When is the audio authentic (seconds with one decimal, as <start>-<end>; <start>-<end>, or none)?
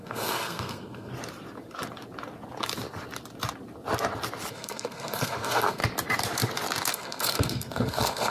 1.1-4.5; 5.8-6.9